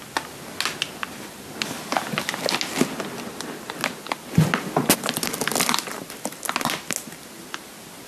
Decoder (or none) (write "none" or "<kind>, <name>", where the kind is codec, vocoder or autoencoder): none